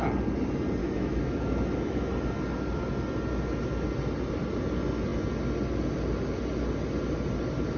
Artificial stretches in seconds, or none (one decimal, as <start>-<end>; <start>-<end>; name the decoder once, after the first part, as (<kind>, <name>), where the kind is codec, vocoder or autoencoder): 0.8-2.1 (autoencoder, DAC-VAE)